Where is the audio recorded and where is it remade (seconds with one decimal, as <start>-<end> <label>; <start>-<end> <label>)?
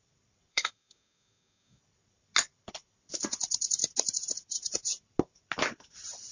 0.0-0.5 recorded; 0.5-1.8 remade; 1.8-6.3 recorded